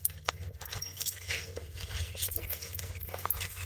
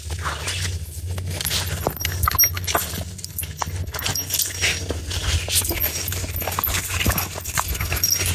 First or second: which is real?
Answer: second